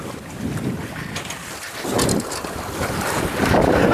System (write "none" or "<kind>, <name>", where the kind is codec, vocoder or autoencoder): none